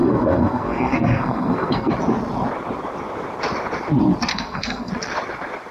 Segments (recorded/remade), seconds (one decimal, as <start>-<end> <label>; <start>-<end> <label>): 0.0-1.9 remade; 1.9-4.3 recorded; 4.3-4.9 remade; 4.9-5.7 recorded